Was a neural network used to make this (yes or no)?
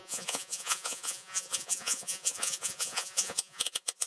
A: yes